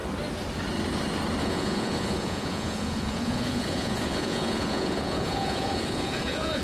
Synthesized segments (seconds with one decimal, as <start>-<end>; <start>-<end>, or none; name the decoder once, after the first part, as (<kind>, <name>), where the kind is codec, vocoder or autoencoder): 1.4-6.6 (vocoder, Vocos)